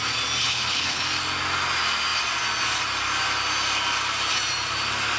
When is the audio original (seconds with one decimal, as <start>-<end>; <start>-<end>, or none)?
0.0-0.4; 1.0-5.2